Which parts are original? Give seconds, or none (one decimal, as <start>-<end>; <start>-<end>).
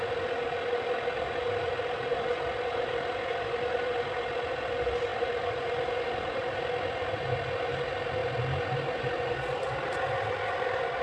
0.0-5.1; 7.1-11.0